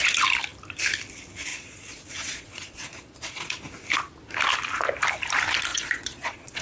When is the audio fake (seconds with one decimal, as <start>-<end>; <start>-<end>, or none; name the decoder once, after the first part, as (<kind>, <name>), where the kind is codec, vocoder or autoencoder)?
1.5-3.6 (vocoder, Vocos); 5.7-6.6